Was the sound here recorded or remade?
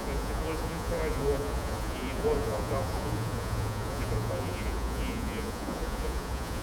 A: remade